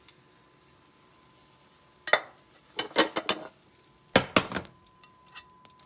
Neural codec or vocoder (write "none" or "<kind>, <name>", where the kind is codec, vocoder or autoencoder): none